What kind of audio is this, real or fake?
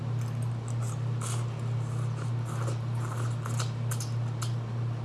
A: real